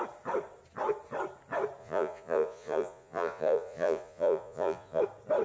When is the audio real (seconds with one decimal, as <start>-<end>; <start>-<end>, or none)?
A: 0.0-1.8; 5.0-5.4